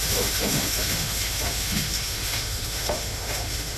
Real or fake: fake